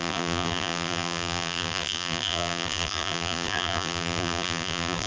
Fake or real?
fake